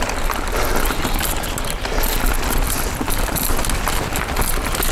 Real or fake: real